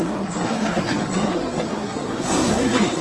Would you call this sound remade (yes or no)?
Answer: yes